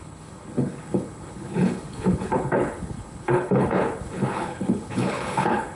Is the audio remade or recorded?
remade